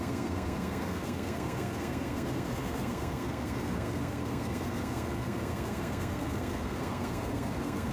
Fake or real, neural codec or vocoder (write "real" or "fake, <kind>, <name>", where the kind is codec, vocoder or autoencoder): fake, codec, SNAC